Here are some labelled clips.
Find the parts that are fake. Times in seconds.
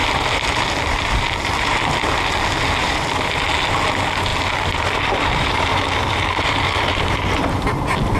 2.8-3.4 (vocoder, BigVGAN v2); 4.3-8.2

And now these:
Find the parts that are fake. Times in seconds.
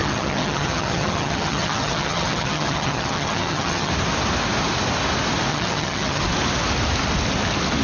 0.0-3.9 (vocoder, HiFi-GAN); 5.5-6.2